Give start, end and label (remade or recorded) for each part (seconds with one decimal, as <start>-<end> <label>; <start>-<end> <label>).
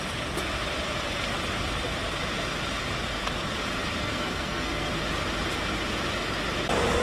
0.0-4.0 recorded; 4.0-4.9 remade; 4.9-7.0 recorded